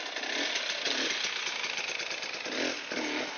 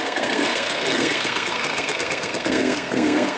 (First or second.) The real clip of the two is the first